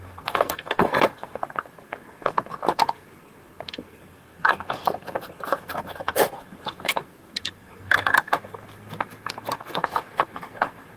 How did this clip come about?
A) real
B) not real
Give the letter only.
B